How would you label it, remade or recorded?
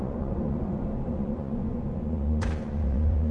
remade